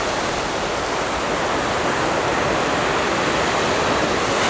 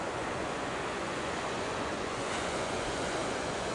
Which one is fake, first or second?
second